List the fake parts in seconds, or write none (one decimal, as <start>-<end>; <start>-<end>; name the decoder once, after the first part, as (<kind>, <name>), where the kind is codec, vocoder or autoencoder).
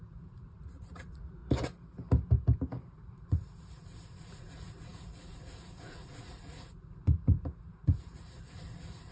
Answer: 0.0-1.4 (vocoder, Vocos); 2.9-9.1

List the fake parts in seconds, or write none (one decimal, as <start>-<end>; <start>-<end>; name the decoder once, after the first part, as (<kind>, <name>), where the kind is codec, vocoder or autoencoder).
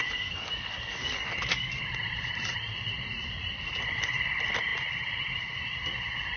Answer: 0.0-1.8 (codec, DAC)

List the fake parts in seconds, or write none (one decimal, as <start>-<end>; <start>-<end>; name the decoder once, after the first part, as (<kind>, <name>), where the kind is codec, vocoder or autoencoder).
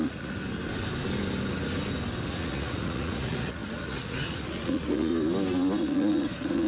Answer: 0.0-0.4 (vocoder, Vocos); 2.3-5.1; 5.8-6.7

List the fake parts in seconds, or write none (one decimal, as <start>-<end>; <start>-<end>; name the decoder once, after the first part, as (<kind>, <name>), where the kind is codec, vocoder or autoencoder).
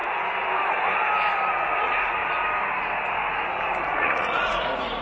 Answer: 1.5-2.2 (vocoder, Vocos); 3.8-5.0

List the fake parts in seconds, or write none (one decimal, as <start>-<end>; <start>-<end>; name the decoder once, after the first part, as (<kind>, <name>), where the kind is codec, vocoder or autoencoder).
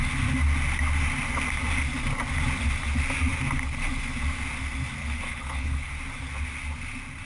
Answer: 5.0-5.9 (codec, HILCodec)